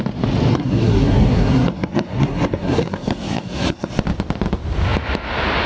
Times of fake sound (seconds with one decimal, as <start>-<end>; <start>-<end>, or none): 0.5-3.9